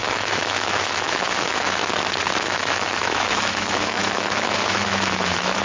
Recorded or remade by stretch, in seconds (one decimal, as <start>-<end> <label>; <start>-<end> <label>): 0.0-1.8 remade; 1.8-2.4 recorded; 2.4-5.6 remade